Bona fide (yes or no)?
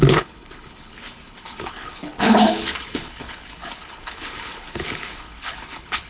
no